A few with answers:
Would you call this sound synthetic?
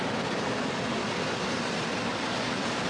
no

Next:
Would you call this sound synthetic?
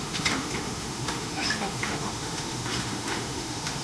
yes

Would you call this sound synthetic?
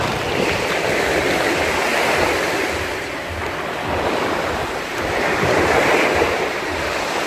no